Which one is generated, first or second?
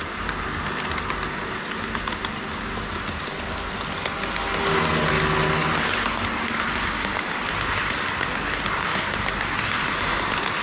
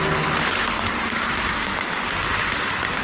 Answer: second